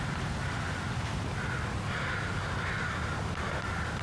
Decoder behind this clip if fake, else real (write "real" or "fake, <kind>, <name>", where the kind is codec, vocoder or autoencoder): real